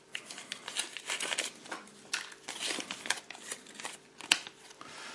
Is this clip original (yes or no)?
yes